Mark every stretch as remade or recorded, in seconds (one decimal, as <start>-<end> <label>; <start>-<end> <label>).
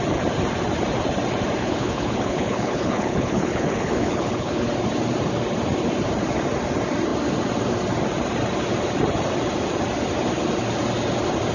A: 0.0-1.6 recorded; 1.6-4.7 remade; 4.7-11.5 recorded